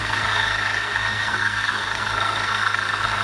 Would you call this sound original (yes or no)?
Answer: no